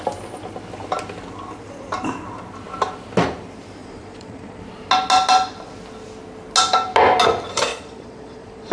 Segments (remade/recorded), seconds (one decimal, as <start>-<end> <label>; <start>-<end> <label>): 0.0-3.8 recorded; 3.8-4.6 remade; 4.6-7.7 recorded; 7.7-8.7 remade